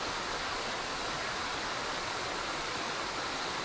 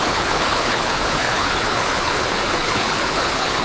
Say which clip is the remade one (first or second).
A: second